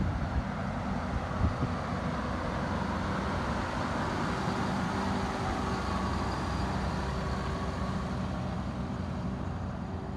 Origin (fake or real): real